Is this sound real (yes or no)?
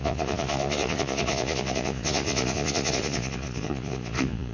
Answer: no